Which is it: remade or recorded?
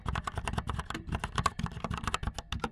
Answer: recorded